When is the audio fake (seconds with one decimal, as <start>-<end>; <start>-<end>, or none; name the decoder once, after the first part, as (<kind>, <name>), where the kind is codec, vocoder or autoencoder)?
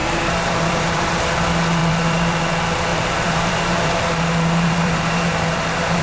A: 0.0-1.3 (vocoder, BigVGAN v2); 1.8-2.5; 2.9-6.0